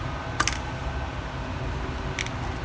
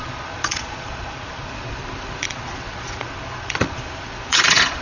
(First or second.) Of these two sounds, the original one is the first